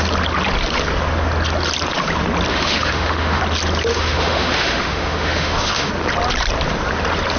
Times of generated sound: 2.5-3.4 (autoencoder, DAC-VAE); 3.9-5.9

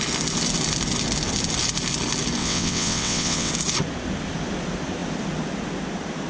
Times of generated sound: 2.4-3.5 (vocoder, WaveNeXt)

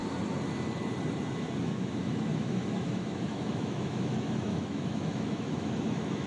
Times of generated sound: 1.6-6.3 (autoencoder, DAC-VAE)

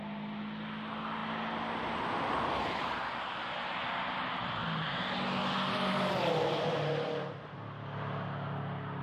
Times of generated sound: none

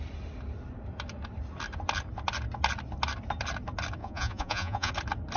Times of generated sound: 4.0-4.9 (vocoder, Vocos)

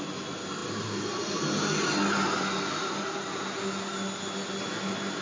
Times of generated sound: none

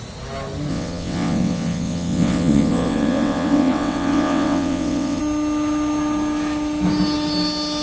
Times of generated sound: 0.7-5.2 (vocoder, WaveNeXt)

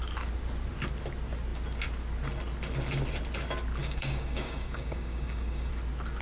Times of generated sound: 3.8-5.7 (codec, DAC)